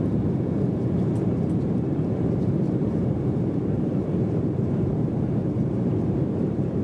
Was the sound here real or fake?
fake